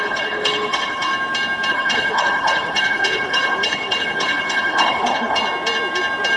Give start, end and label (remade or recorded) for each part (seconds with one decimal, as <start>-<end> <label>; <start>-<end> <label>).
0.0-1.1 remade; 1.1-1.7 recorded; 1.7-5.4 remade; 5.4-6.4 recorded